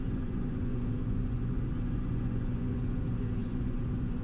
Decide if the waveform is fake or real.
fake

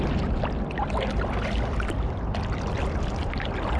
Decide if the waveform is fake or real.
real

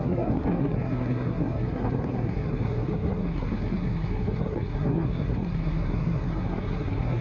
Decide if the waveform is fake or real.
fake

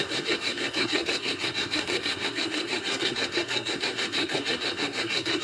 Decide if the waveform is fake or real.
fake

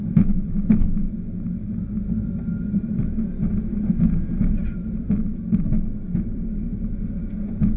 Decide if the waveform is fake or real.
real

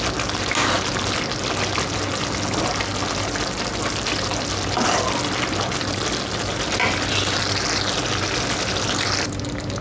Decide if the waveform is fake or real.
real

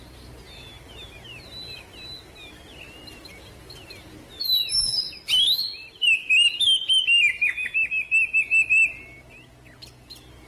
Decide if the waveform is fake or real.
real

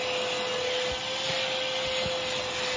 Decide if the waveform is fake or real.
real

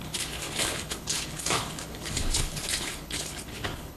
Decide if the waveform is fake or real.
fake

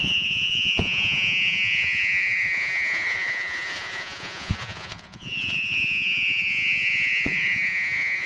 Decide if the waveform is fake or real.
fake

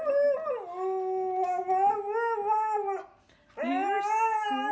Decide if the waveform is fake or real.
real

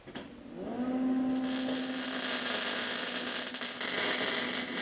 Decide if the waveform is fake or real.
real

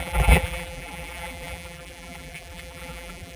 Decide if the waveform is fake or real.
fake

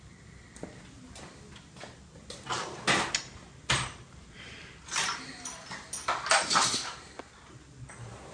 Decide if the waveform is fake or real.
real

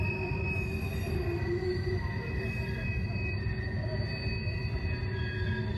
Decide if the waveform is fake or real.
real